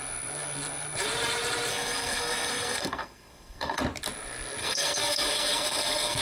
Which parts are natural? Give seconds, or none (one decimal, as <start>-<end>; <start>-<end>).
0.0-1.7; 3.8-4.6